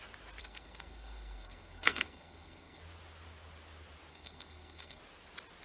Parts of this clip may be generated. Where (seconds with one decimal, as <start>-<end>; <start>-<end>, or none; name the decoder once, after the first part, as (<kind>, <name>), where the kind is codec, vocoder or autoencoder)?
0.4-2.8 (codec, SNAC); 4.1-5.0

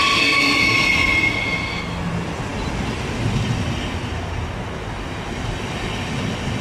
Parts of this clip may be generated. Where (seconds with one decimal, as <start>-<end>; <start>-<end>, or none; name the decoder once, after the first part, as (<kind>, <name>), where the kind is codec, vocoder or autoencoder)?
none

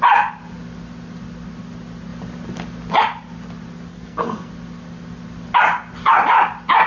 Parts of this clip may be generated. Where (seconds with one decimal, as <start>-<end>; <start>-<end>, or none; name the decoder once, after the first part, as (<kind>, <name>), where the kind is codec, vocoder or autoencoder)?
3.9-4.5 (codec, SNAC)